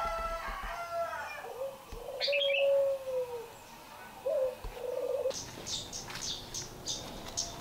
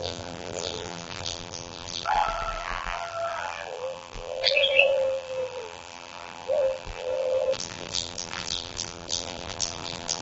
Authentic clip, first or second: first